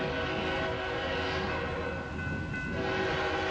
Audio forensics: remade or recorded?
recorded